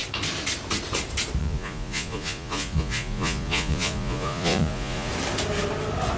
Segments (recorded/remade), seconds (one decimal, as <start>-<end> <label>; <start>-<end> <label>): 0.0-1.4 recorded; 1.4-5.1 remade; 5.1-6.2 recorded